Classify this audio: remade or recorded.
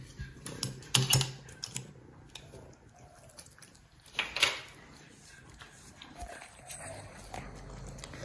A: recorded